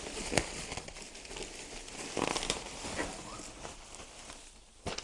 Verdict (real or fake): real